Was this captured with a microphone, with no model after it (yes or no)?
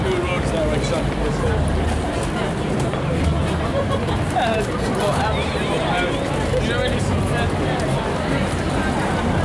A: yes